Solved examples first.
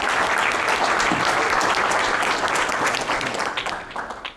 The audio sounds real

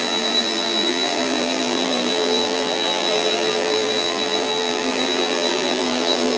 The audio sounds fake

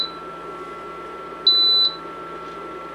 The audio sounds real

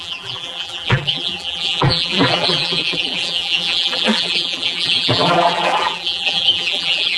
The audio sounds fake